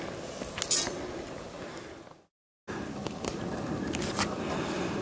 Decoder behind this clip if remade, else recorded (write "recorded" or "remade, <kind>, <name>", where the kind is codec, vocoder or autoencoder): recorded